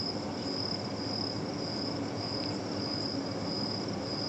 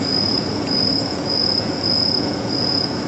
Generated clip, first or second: second